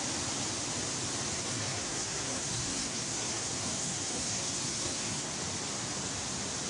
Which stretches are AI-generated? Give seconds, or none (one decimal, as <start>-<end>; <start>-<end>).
1.3-5.3